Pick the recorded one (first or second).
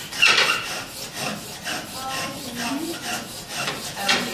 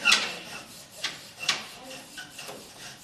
first